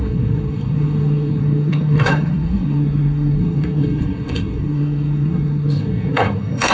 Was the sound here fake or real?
fake